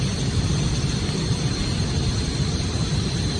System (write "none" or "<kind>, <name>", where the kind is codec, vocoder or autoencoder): none